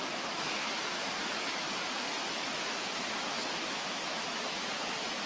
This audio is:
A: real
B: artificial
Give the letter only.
B